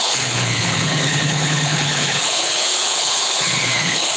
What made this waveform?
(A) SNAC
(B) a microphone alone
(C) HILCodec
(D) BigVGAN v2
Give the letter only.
C